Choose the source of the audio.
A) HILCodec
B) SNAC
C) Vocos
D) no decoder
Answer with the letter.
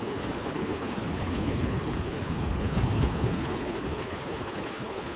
A